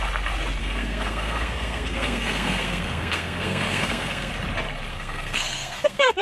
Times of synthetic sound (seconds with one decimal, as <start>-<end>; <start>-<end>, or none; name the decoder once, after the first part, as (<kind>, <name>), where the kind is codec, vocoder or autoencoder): 0.6-4.3 (codec, SNAC); 4.9-6.2